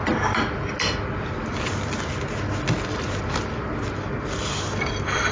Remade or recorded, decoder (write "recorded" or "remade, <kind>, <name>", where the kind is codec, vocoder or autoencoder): recorded